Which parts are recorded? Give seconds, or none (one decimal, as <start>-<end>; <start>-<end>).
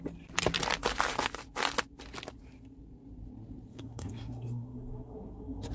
0.0-3.7